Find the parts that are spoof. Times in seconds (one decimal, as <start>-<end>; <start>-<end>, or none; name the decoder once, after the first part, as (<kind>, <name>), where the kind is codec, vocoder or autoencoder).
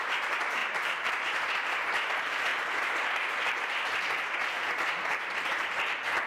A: 0.6-1.1 (vocoder, BigVGAN v2)